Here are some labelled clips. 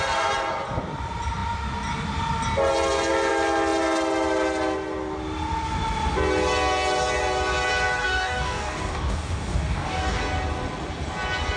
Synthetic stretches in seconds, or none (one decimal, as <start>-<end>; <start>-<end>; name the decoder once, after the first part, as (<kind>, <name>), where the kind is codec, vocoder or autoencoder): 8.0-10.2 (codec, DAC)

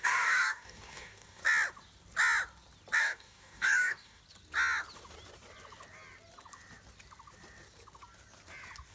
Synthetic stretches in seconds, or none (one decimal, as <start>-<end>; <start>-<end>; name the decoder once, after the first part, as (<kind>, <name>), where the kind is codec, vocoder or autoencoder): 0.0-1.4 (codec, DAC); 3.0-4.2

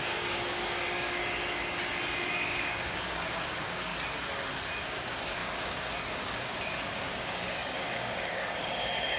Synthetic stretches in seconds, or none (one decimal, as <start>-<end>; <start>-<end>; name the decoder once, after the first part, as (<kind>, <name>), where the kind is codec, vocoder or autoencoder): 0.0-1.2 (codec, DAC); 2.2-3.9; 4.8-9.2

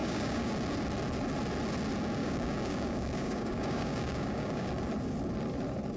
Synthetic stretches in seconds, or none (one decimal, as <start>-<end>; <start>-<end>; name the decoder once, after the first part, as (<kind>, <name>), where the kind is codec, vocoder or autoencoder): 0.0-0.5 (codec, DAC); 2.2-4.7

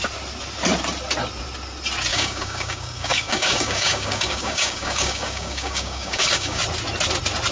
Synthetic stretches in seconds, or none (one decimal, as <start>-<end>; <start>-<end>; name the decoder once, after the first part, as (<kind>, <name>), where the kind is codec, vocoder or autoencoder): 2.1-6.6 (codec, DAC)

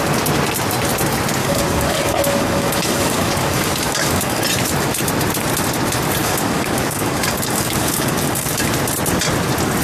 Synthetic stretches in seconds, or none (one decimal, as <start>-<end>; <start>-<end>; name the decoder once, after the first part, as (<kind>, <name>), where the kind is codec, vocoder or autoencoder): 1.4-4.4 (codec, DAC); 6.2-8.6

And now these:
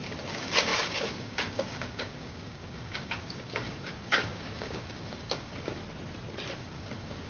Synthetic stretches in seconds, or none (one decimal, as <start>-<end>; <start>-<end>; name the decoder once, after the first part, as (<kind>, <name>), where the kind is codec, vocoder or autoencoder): 0.0-5.8 (codec, DAC); 6.6-7.3